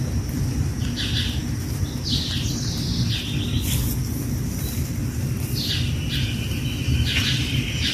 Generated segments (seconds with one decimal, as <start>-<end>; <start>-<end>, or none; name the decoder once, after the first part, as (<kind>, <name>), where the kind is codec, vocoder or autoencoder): none